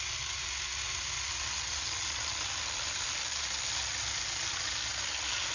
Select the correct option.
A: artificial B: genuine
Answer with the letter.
B